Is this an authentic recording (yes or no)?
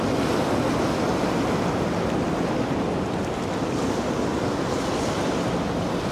yes